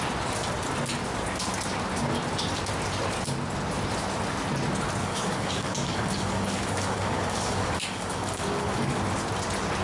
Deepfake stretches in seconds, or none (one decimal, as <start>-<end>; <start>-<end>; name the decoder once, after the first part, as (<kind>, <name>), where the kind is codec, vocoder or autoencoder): 5.0-9.0 (codec, DAC)